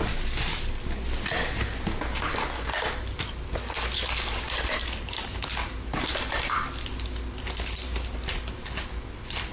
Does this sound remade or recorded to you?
recorded